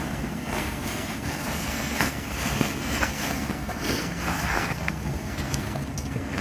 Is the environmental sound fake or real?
fake